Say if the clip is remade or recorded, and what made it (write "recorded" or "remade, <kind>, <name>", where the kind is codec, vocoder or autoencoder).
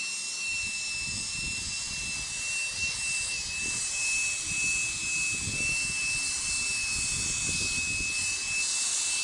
recorded